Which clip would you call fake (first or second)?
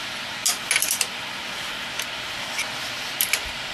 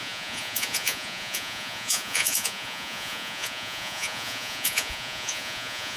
second